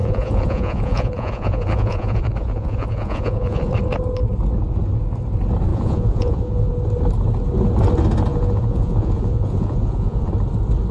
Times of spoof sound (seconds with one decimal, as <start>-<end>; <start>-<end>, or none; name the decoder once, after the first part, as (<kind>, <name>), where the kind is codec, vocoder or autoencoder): 0.0-3.7 (vocoder, Vocos); 5.7-6.7; 8.3-10.3